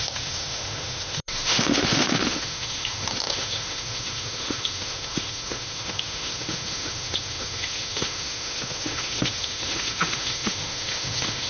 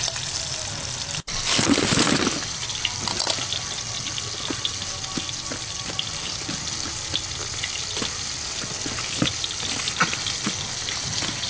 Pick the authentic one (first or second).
second